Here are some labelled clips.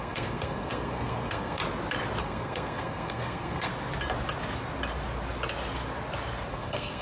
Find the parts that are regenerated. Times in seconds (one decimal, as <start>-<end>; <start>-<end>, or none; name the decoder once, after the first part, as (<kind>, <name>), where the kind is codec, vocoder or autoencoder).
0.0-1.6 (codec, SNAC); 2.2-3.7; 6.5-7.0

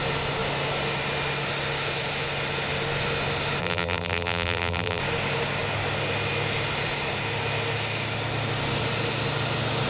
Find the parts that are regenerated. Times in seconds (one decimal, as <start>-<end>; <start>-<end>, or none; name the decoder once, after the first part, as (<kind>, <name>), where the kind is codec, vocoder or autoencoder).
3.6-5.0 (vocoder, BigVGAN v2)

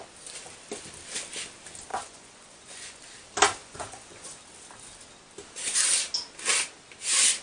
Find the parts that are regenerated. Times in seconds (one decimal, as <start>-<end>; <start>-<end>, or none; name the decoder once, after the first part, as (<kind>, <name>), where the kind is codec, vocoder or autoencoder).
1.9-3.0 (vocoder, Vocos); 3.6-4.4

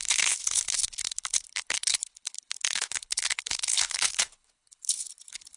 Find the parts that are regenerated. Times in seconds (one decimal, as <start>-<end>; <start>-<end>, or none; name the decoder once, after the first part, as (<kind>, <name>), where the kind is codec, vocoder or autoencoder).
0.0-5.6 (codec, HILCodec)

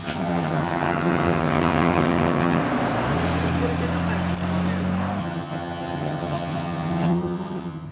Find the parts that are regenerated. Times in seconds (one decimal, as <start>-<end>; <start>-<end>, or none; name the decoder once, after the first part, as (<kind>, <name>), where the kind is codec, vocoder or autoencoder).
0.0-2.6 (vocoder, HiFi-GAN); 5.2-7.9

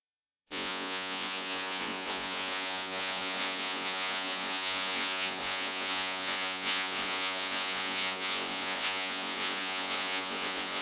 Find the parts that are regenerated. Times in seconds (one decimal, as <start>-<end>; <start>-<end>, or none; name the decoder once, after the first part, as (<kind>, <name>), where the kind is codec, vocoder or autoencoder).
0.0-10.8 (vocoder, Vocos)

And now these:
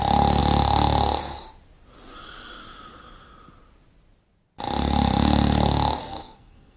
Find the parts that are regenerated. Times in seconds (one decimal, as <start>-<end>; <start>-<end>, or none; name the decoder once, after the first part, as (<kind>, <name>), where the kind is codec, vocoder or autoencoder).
6.0-6.8 (codec, SNAC)

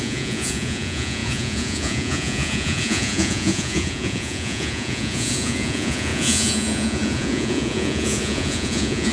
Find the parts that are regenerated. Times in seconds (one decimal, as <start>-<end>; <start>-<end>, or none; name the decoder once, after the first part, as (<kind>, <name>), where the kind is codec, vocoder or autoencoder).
0.0-9.1 (vocoder, Vocos)